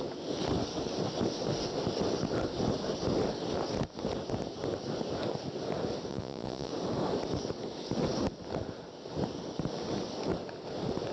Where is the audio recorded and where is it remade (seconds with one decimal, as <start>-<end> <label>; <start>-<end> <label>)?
0.0-6.1 recorded; 6.1-6.7 remade; 6.7-11.1 recorded